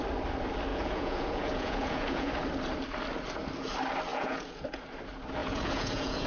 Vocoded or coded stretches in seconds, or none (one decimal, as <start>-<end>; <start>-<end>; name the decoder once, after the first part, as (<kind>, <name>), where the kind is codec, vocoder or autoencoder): 0.7-2.3 (vocoder, Vocos); 4.1-4.8; 5.4-6.3